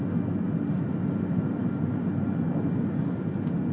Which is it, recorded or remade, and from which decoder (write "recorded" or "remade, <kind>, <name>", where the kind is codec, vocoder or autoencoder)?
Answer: recorded